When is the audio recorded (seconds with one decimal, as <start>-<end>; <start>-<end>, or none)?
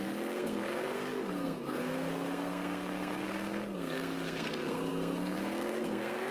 none